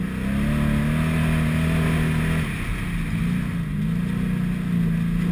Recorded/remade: recorded